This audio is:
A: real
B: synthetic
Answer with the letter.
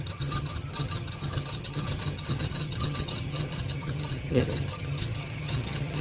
B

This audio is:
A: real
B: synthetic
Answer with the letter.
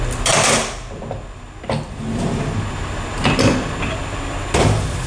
A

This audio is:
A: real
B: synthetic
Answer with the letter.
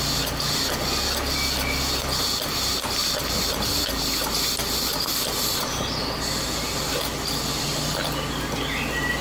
A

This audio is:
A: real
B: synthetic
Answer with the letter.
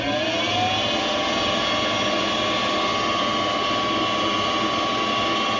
A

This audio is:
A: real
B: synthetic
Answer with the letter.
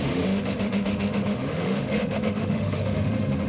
B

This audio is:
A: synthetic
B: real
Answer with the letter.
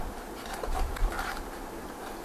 B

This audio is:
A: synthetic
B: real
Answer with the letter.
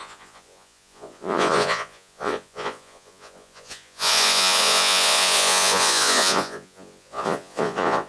A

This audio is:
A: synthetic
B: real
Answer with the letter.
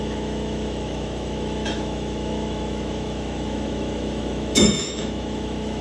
A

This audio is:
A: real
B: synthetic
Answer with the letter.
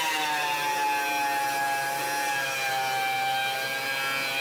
A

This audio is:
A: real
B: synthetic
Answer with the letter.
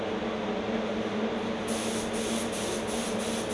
A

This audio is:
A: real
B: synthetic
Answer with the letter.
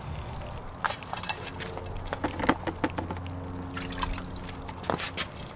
A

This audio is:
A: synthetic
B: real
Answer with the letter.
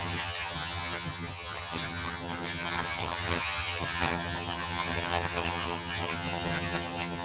A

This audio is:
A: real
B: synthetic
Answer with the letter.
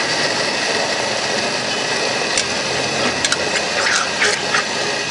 A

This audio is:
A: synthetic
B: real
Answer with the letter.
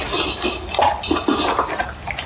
B